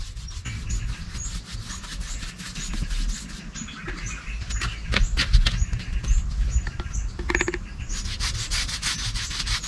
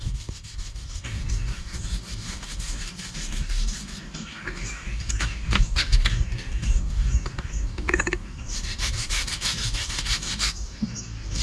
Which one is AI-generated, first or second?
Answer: second